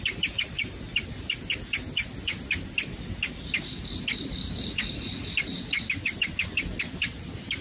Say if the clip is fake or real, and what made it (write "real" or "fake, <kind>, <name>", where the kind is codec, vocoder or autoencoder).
real